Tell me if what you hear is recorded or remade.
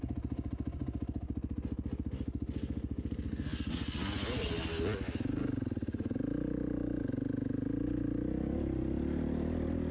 recorded